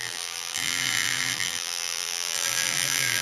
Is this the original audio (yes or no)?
no